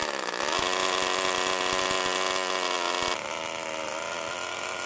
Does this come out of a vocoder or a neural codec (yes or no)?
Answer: no